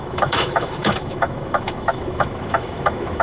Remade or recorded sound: remade